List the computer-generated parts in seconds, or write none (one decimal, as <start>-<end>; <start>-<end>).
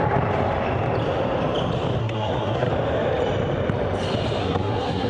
2.0-2.7; 4.4-5.1